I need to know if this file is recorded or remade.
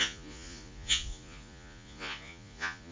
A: remade